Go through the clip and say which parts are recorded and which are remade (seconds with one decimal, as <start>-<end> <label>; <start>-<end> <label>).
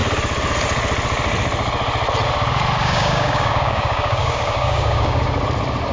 0.0-2.8 recorded; 2.8-5.2 remade; 5.2-5.9 recorded